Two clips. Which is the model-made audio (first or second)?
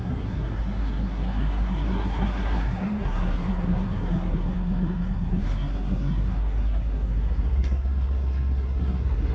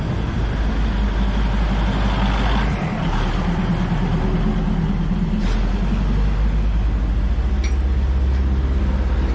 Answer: first